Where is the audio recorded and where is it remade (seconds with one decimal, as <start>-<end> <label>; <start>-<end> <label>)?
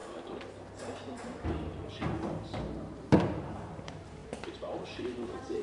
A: 0.0-3.1 recorded; 3.1-5.6 remade